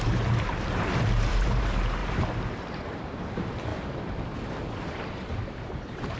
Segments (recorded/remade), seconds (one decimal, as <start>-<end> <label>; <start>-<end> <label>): 0.0-2.0 remade; 2.0-2.8 recorded; 2.8-3.7 remade; 3.7-4.5 recorded; 4.5-6.2 remade